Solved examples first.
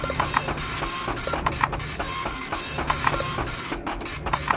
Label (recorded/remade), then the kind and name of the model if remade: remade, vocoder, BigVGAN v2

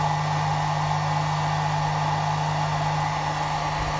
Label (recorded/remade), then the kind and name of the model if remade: recorded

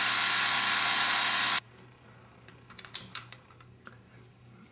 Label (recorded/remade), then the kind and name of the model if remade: remade, vocoder, BigVGAN v2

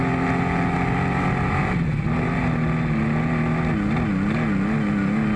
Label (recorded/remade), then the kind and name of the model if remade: recorded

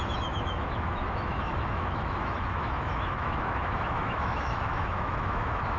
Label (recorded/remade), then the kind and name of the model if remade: remade, autoencoder, DAC-VAE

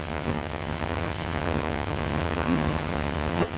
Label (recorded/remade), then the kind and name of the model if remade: remade, vocoder, HiFi-GAN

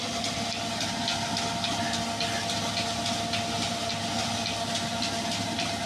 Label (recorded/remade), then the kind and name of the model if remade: recorded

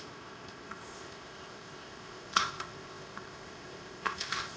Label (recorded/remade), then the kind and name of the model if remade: remade, codec, ZipCodec